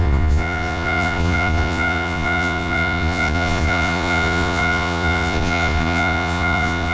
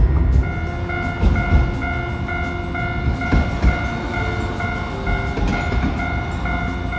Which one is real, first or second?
second